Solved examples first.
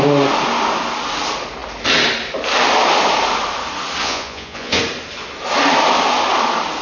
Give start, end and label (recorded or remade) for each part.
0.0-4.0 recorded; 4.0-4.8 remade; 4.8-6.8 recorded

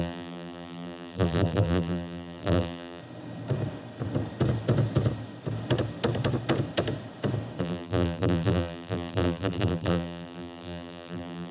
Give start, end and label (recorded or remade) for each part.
0.0-3.0 remade; 3.0-7.6 recorded; 7.6-11.5 remade